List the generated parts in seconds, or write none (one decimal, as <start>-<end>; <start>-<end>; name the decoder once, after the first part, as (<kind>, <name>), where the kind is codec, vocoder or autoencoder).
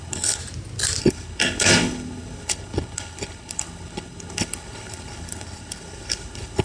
0.0-0.4 (codec, HILCodec); 1.0-6.6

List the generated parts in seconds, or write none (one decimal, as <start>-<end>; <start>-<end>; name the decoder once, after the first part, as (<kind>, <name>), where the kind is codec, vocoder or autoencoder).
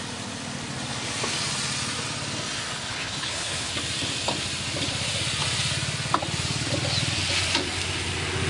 2.9-3.7 (codec, HILCodec)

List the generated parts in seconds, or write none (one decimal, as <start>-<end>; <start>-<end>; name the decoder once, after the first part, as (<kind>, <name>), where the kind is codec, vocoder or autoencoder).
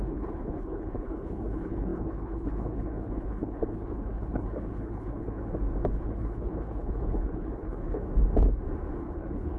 0.0-5.4 (codec, HILCodec); 5.9-8.0; 9.0-9.6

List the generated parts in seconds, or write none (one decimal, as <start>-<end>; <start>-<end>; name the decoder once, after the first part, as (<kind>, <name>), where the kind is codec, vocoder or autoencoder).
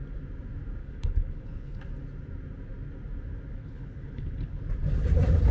0.8-1.8 (codec, HILCodec); 3.6-4.6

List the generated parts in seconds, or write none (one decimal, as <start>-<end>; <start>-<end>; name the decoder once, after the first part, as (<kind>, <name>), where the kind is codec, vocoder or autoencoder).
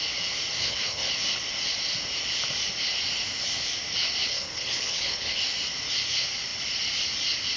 0.6-1.1 (codec, HILCodec); 4.3-5.4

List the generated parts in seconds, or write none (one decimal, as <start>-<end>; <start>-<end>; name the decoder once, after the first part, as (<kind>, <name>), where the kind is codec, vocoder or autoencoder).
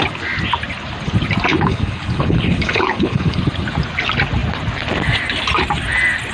1.5-3.4 (codec, HILCodec)